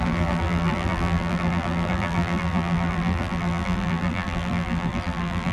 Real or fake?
fake